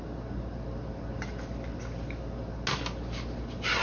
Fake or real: real